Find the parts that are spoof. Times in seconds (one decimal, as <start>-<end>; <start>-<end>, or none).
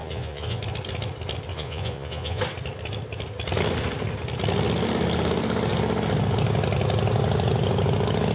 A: 0.0-0.6; 1.5-2.4